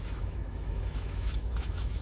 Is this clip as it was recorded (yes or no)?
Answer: no